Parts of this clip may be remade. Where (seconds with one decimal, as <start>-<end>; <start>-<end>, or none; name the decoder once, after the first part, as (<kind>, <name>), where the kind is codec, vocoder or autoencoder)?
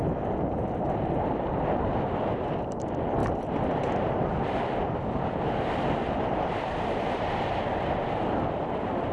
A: none